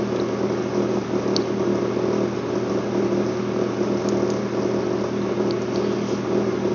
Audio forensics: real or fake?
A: real